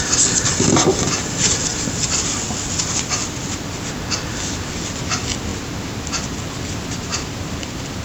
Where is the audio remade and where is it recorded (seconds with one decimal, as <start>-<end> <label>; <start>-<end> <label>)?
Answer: 0.0-7.1 recorded; 7.1-8.0 remade